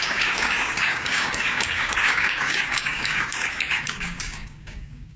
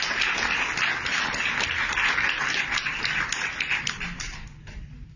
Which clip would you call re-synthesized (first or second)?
first